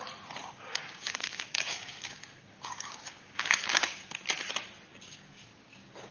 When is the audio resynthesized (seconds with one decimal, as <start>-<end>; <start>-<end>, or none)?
0.4-4.1; 4.9-6.1